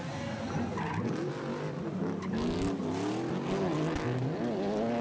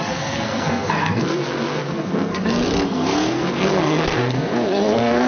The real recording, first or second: first